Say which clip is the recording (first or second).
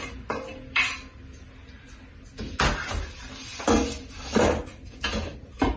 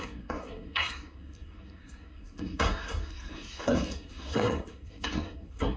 first